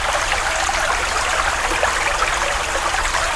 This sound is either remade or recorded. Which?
recorded